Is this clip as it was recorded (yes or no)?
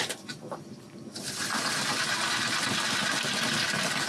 yes